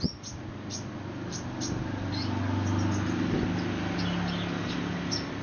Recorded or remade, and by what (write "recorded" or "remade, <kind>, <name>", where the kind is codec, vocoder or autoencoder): recorded